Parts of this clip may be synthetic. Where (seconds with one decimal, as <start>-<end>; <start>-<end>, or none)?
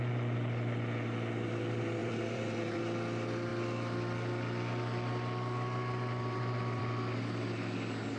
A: 2.0-2.8